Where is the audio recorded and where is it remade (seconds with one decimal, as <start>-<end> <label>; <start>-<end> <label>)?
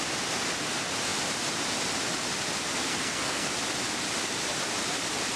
0.0-2.9 recorded; 2.9-3.5 remade; 3.5-5.4 recorded